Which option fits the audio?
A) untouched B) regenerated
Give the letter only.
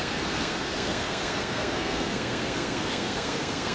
B